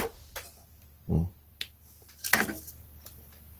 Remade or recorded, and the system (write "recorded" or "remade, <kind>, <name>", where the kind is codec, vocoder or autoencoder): recorded